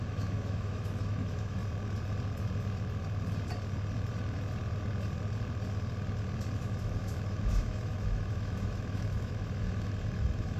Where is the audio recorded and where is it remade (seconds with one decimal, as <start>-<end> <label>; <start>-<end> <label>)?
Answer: 0.0-1.6 remade; 1.6-6.6 recorded; 6.6-10.6 remade